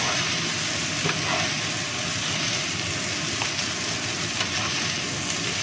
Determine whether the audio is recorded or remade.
recorded